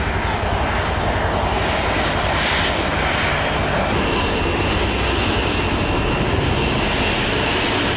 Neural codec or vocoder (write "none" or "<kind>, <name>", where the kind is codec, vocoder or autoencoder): none